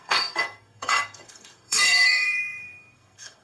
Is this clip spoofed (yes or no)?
yes